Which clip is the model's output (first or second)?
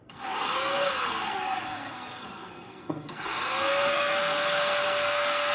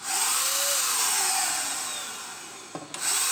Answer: first